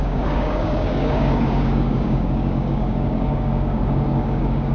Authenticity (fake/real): fake